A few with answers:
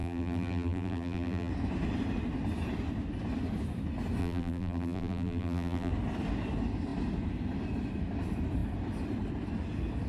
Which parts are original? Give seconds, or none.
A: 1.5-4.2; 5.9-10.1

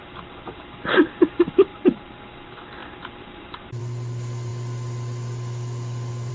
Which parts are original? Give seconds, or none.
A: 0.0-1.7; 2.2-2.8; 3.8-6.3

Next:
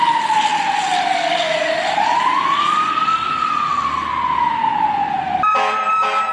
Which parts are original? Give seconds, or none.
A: 0.0-0.5; 3.0-6.3